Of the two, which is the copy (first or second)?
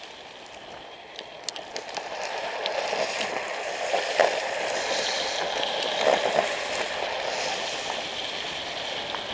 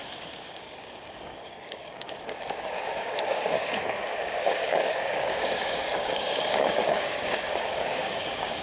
second